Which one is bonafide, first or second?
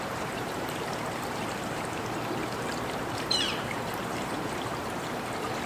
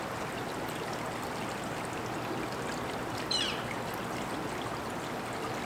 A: second